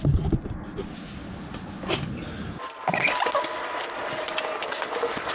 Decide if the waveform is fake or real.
real